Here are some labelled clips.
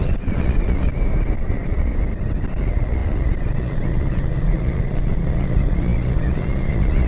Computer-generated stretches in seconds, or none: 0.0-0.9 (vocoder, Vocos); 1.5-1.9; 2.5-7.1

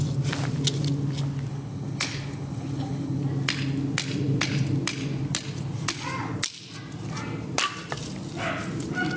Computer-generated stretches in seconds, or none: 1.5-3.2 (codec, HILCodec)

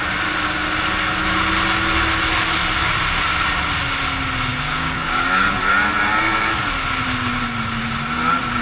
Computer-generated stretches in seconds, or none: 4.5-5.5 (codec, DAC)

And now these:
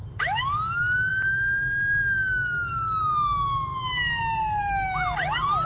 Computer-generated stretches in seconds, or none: none